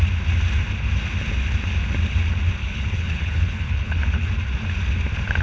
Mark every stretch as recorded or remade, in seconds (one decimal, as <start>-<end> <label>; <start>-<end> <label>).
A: 0.0-2.6 recorded; 2.6-4.3 remade; 4.3-5.4 recorded